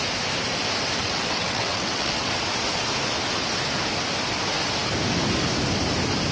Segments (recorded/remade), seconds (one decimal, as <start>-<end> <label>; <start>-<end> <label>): 0.0-1.0 recorded; 1.0-2.3 remade; 2.3-6.3 recorded